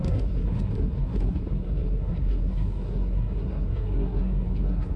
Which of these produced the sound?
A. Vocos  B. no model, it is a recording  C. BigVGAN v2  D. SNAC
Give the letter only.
D